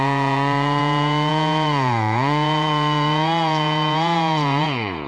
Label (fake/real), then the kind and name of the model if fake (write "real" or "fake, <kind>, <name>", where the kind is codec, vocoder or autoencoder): fake, vocoder, Vocos